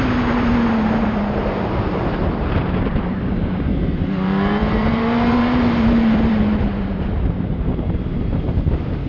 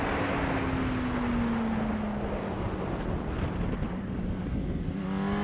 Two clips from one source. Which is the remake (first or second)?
first